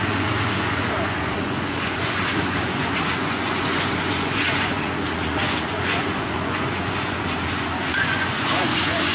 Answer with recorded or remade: remade